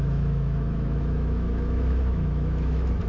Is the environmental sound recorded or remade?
remade